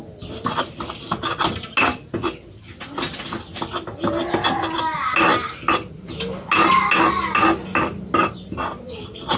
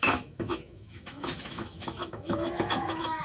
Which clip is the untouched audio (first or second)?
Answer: first